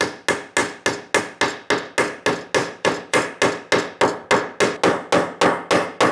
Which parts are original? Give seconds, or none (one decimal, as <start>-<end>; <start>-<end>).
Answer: 0.0-2.6; 3.2-6.1